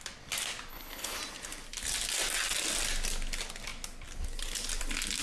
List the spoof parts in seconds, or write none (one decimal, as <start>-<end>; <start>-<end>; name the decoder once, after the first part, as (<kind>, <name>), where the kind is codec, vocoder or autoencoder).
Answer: 0.7-1.2 (codec, HILCodec)